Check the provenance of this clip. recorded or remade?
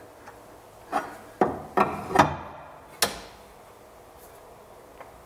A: recorded